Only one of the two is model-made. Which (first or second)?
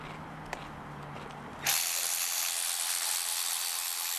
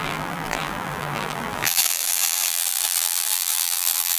second